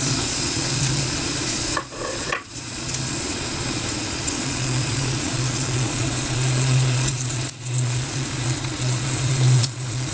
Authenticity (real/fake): fake